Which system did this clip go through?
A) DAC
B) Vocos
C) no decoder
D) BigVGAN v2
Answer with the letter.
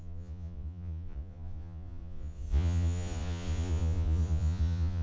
B